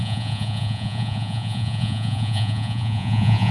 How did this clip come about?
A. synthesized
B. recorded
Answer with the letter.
A